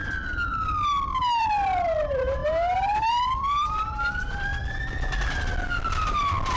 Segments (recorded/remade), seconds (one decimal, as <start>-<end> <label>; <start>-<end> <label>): 0.0-1.4 recorded; 1.4-2.4 remade; 2.4-3.1 recorded; 3.1-4.5 remade; 4.5-5.8 recorded; 5.8-6.6 remade